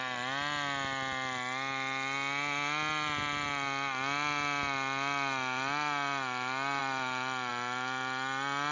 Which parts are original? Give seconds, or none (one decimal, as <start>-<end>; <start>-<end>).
0.0-8.7